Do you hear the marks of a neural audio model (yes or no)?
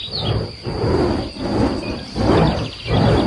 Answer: no